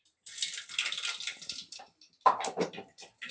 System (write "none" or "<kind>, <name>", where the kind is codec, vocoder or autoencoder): none